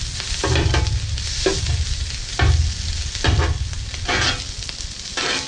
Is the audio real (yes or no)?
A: yes